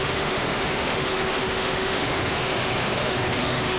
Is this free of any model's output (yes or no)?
no